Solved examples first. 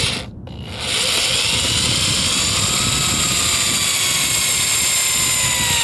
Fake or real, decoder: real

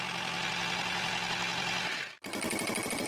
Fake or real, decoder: real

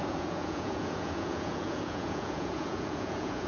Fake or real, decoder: fake, vocoder, Vocos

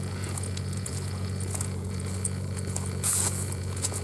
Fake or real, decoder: fake, vocoder, Vocos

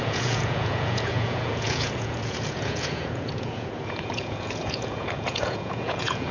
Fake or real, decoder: fake, vocoder, Vocos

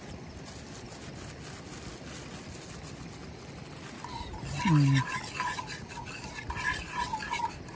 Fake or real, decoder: real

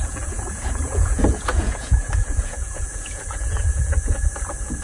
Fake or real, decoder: fake, vocoder, Vocos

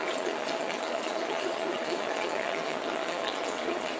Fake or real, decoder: fake, vocoder, Vocos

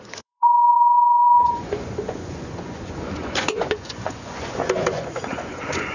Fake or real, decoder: fake, vocoder, Vocos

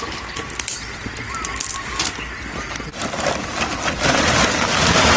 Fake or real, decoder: real